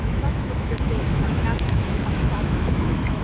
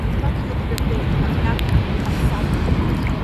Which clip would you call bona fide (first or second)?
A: second